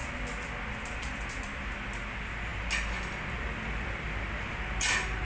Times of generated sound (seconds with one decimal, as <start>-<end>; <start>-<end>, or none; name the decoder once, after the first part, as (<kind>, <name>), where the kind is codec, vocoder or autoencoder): none